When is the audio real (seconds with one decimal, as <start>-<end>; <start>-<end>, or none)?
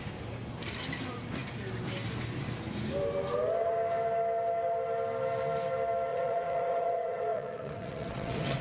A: 0.0-6.1